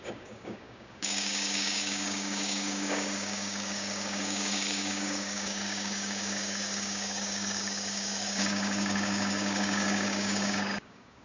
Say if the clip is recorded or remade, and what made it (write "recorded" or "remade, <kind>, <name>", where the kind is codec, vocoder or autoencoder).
remade, codec, DAC